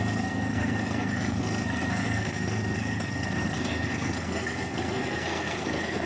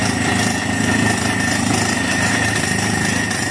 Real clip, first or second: second